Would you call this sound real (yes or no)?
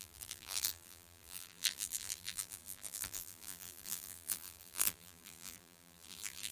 no